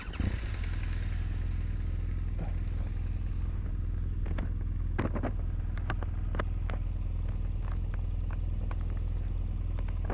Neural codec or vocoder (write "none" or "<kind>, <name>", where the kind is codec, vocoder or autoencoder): none